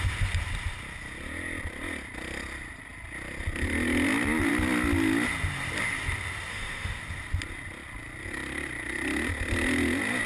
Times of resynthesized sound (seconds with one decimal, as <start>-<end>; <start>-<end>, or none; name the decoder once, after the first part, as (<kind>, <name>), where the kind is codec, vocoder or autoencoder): 6.5-7.0 (autoencoder, DAC-VAE)